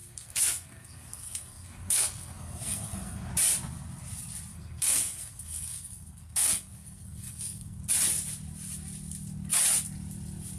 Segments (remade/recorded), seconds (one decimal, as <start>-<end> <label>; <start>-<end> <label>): 0.0-3.3 remade; 3.3-4.5 recorded; 4.5-7.8 remade; 7.8-10.6 recorded